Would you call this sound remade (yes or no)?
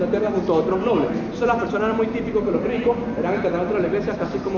no